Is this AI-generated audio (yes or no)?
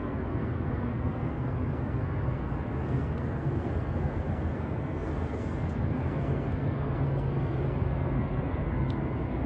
yes